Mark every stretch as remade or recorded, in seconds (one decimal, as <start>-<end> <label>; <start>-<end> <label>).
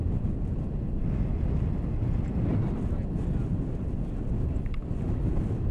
0.0-5.7 recorded